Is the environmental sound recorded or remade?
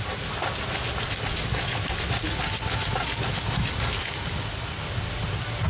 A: recorded